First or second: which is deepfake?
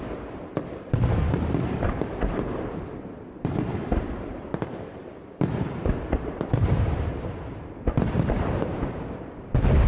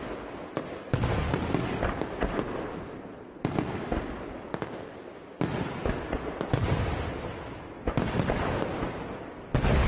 first